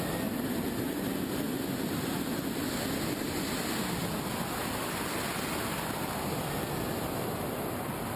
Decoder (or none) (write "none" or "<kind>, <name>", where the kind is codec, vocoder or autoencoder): none